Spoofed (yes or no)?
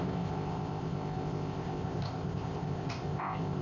yes